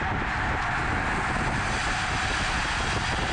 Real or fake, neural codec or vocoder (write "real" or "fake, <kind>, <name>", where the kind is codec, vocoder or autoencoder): real